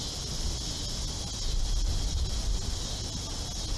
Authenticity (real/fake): real